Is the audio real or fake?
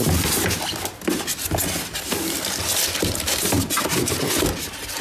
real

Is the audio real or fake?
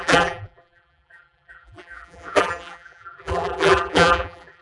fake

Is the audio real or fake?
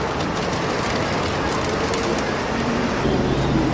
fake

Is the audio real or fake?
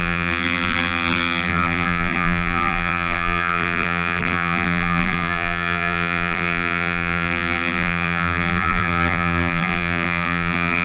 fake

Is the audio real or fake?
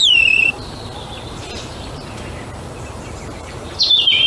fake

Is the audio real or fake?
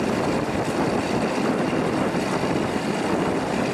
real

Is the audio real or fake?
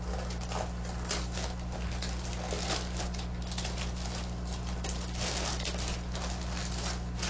real